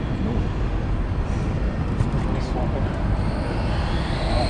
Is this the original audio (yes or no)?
yes